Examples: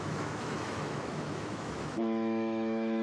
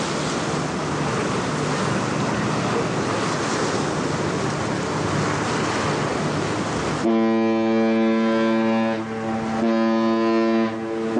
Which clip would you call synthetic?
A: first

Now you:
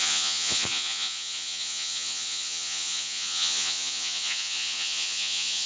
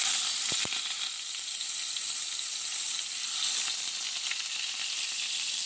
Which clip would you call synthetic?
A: first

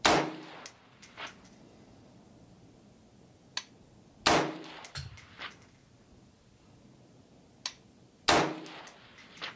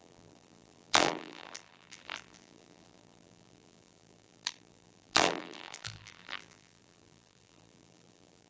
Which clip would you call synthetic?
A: second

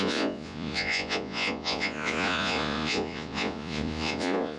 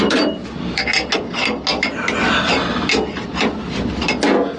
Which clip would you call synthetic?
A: first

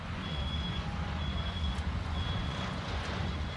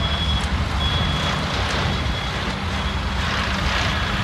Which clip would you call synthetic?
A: first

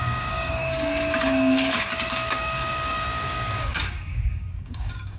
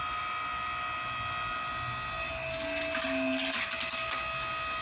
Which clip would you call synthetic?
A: first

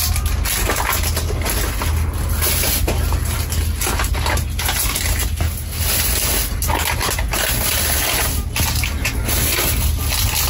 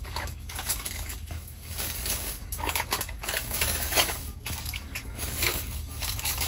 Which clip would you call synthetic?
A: second